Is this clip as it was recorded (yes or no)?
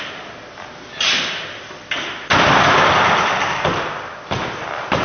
yes